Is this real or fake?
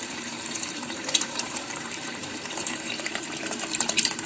fake